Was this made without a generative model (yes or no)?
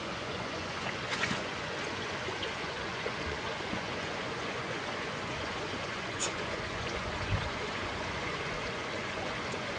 no